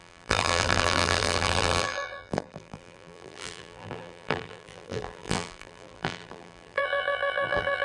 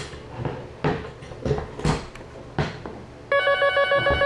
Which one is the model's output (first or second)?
first